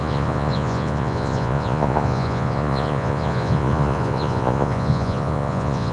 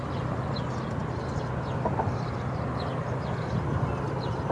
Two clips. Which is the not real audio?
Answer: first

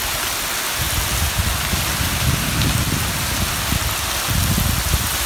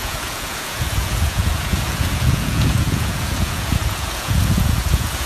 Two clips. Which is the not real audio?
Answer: second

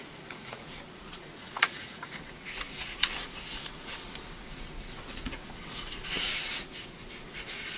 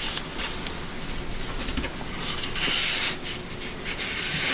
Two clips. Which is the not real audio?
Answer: first